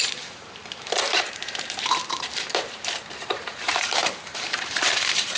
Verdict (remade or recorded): remade